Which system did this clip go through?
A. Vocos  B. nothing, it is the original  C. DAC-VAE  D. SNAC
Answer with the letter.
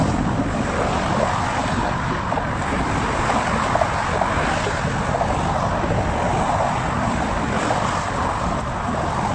B